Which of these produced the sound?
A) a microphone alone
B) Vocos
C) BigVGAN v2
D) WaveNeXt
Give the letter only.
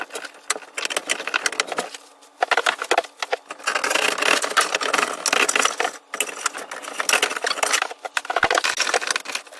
A